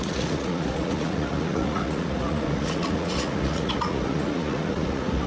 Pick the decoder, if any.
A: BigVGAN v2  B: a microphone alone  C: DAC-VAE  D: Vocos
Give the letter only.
D